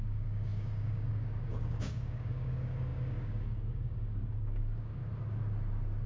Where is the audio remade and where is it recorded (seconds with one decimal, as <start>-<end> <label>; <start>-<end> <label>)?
0.0-5.0 remade; 5.0-6.1 recorded